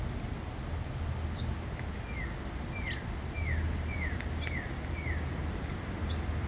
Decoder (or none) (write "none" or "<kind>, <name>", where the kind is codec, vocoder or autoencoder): none